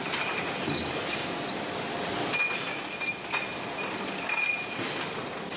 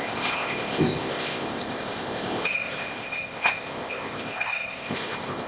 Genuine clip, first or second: first